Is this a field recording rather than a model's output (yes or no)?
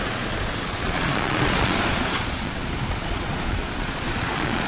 no